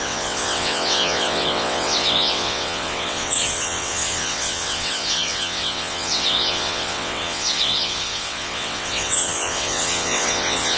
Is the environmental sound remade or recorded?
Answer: remade